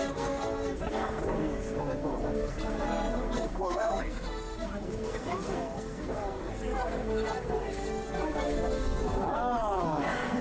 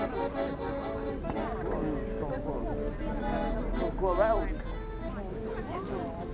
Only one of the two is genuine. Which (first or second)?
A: second